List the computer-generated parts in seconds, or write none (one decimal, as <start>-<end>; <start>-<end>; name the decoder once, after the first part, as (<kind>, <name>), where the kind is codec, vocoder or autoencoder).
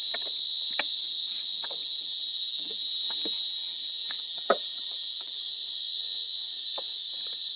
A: 1.8-5.4 (vocoder, BigVGAN v2)